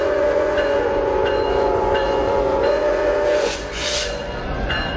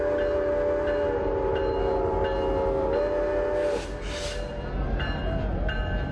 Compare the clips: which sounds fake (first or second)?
first